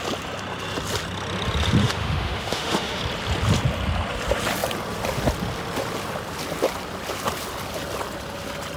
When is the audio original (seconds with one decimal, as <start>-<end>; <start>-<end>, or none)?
0.0-1.8; 3.0-8.8